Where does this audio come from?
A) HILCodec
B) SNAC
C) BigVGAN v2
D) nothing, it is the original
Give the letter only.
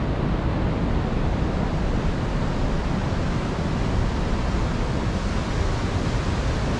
D